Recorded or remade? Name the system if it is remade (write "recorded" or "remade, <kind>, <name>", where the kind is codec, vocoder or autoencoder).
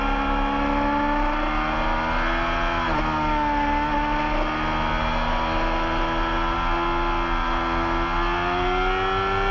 recorded